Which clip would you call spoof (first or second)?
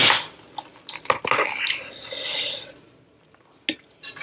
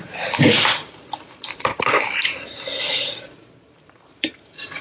second